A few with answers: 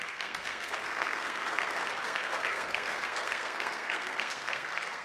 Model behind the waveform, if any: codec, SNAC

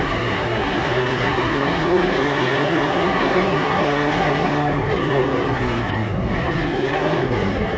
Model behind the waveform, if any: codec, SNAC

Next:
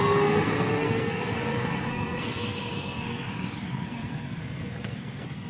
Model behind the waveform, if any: codec, SNAC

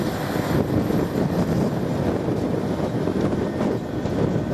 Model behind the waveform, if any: none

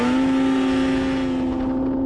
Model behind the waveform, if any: none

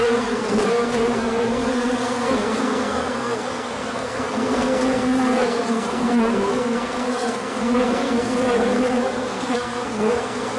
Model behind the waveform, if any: codec, SNAC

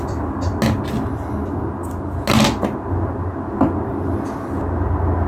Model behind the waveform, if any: none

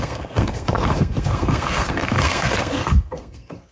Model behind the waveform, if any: codec, SNAC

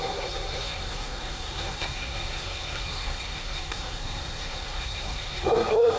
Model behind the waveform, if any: codec, SNAC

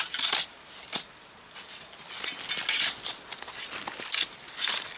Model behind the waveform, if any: none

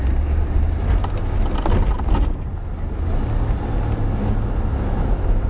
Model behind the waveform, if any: none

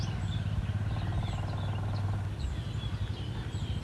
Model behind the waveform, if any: none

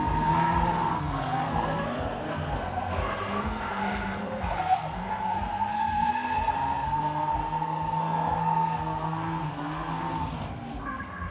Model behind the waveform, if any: codec, SNAC